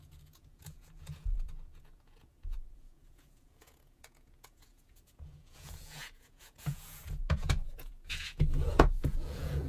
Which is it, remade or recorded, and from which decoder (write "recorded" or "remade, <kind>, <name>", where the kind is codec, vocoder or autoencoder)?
remade, vocoder, Vocos